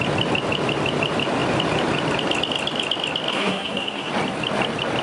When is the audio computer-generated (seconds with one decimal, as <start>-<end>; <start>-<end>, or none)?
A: 3.3-4.1